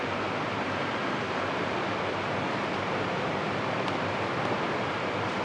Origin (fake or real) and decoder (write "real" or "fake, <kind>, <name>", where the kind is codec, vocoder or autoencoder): fake, vocoder, BigVGAN v2